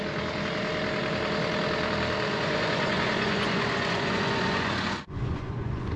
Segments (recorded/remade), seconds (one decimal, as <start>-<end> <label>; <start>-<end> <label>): 0.0-2.3 recorded; 2.3-6.0 remade